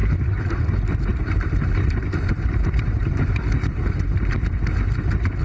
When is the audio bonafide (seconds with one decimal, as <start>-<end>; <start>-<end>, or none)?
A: 0.5-1.1; 3.8-5.4